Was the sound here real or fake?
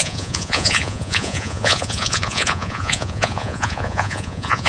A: fake